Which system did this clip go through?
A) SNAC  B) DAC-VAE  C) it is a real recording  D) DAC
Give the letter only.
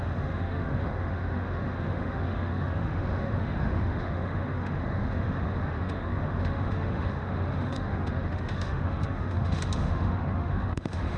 B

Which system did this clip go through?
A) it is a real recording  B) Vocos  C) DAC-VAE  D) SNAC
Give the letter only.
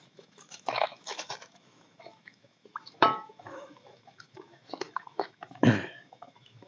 C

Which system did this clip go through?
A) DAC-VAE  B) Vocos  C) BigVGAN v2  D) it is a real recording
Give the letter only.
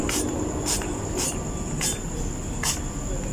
D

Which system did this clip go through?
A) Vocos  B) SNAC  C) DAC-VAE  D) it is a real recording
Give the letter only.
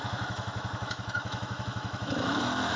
C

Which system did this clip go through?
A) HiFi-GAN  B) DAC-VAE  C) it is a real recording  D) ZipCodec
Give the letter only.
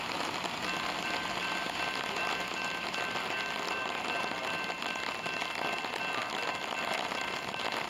C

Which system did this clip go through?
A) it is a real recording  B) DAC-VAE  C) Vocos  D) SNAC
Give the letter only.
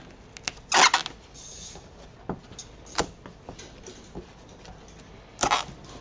A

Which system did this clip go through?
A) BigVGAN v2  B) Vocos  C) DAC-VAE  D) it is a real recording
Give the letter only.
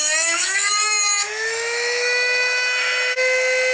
C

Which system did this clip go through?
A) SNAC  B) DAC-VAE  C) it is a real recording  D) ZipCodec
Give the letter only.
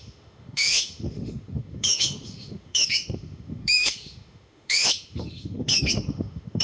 B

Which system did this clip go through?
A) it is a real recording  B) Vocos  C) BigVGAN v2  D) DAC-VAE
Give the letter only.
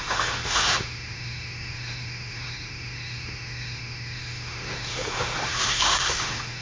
D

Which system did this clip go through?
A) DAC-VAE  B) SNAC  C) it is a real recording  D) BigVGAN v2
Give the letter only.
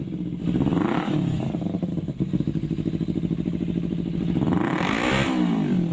C